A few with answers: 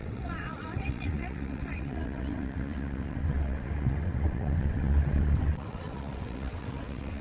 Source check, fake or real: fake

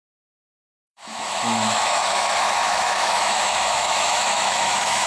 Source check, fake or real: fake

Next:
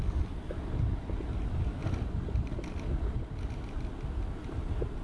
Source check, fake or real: real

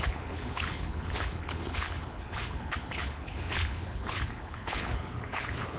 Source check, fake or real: fake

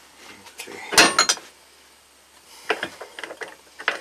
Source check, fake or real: real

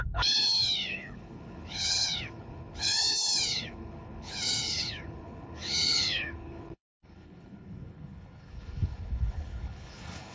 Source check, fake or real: fake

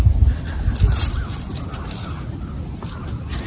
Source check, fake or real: real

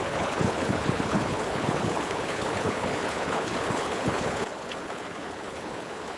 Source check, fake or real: fake